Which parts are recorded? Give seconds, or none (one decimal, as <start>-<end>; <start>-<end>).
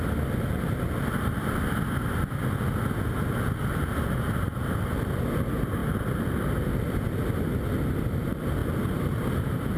0.0-9.8